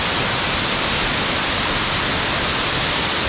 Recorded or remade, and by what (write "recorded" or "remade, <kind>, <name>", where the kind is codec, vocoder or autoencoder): recorded